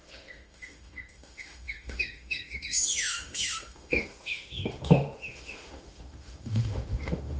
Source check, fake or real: fake